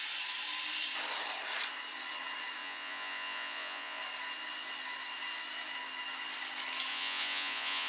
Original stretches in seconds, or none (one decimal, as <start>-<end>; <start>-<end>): 0.0-2.6; 4.0-6.9